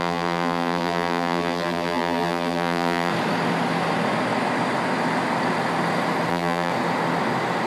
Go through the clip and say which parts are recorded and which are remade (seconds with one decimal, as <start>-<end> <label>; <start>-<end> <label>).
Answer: 0.0-3.1 remade; 3.1-6.3 recorded; 6.3-6.7 remade; 6.7-7.7 recorded